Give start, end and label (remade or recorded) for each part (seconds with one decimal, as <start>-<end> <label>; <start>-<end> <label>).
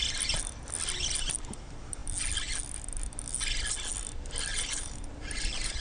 0.0-4.5 recorded; 4.5-5.8 remade